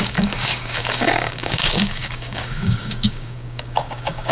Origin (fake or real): fake